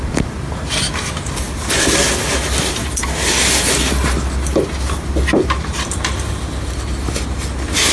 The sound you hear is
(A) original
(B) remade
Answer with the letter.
A